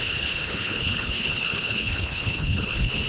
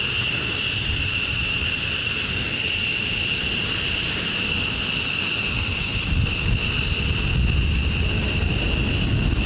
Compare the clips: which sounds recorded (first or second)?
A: second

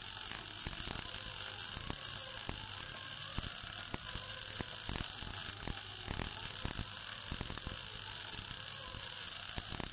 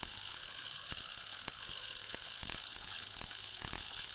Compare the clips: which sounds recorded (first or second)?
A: first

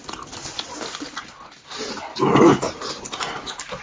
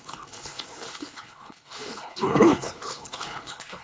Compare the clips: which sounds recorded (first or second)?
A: first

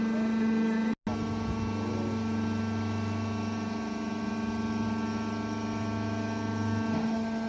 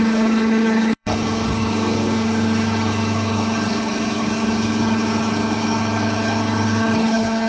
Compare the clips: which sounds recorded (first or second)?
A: first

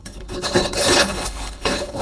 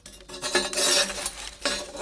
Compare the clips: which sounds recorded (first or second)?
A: second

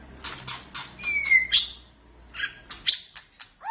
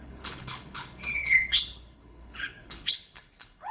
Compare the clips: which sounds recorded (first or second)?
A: first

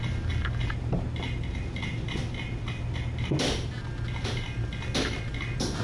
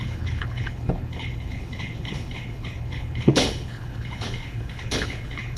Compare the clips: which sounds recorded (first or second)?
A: first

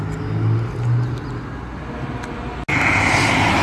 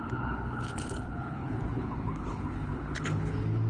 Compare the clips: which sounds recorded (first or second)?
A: first